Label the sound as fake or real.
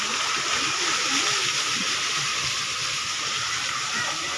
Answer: real